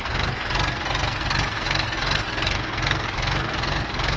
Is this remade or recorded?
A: remade